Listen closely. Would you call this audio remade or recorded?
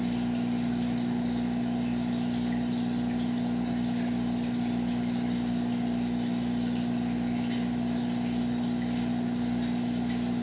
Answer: recorded